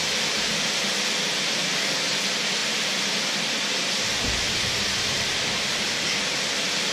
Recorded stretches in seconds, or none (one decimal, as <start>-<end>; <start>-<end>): 0.0-6.9